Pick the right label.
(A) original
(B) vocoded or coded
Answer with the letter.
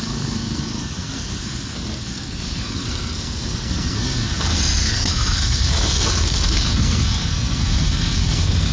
B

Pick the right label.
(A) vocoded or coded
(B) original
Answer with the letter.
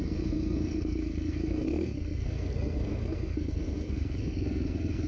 A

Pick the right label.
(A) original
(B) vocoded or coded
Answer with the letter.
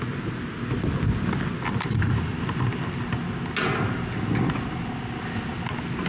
A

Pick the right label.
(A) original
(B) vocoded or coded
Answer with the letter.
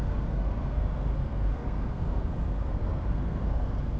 B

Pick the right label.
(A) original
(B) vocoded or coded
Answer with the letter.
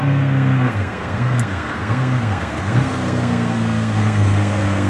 B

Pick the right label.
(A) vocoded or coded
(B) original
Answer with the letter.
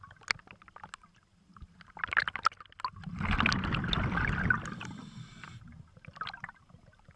B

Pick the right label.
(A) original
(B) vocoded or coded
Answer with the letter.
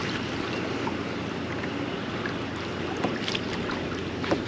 A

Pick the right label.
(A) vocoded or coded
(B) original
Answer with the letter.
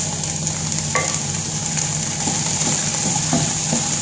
B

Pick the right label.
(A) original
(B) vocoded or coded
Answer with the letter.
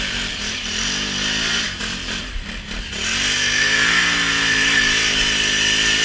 A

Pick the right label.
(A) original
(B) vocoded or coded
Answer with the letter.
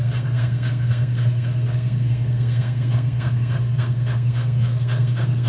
B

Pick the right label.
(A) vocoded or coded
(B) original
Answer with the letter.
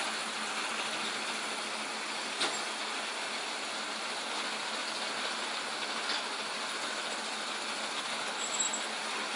B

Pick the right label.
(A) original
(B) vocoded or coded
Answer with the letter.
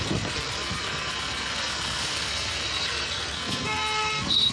B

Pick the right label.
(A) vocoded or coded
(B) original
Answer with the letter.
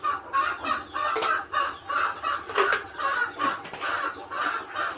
B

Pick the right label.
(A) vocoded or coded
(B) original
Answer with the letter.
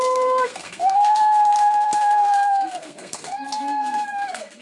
A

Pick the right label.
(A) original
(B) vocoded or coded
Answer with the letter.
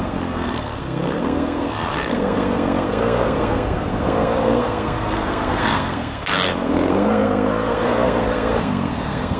B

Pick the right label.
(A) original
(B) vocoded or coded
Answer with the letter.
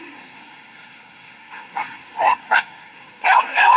B